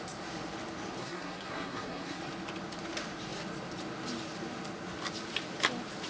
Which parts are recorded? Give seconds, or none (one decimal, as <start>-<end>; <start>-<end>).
0.0-1.0; 2.2-6.1